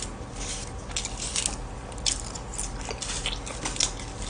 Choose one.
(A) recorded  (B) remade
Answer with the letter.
A